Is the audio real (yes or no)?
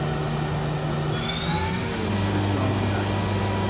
yes